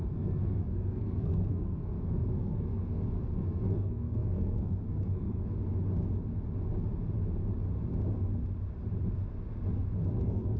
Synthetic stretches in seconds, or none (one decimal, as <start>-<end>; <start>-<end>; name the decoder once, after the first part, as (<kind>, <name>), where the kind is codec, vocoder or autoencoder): 0.0-5.4 (codec, SNAC); 10.2-10.6